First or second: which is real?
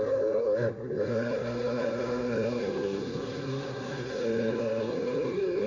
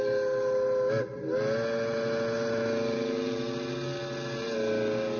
second